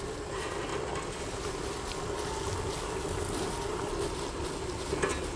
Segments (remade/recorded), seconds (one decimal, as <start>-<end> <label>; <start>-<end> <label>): 0.0-5.4 recorded